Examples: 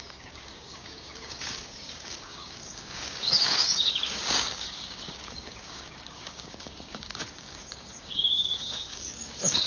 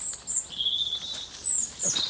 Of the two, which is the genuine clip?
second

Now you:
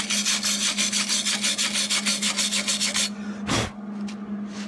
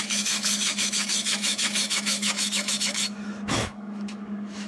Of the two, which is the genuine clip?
first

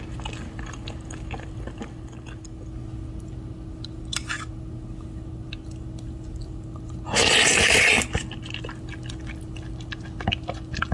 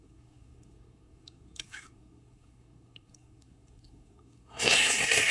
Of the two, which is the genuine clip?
first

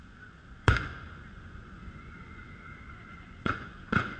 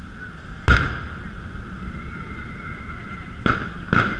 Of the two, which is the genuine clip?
second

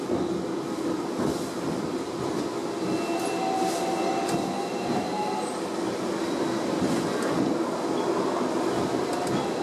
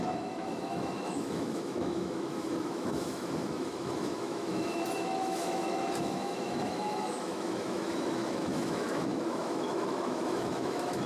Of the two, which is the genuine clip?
first